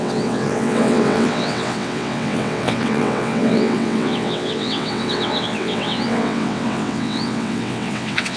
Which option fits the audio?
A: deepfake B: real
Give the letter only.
A